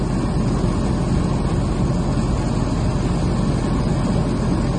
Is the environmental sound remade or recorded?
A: recorded